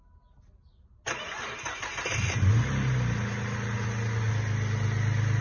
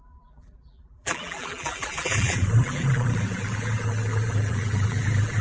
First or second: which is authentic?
first